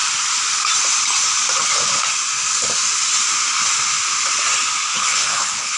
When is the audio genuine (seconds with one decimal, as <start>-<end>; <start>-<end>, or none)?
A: 0.0-4.9